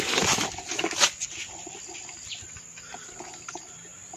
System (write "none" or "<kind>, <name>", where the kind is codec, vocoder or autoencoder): none